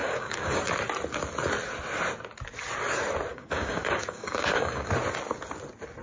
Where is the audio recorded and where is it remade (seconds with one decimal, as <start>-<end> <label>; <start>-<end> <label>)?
0.0-0.6 remade; 0.6-3.3 recorded; 3.3-4.9 remade; 4.9-6.0 recorded